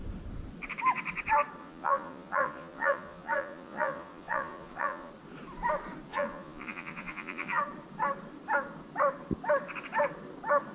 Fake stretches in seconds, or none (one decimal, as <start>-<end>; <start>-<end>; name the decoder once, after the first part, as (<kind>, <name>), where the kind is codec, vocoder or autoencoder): 1.6-5.1 (vocoder, Vocos); 6.1-7.6